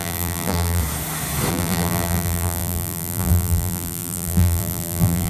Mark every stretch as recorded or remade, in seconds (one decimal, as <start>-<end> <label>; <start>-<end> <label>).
0.0-0.8 remade; 0.8-1.5 recorded; 1.5-5.3 remade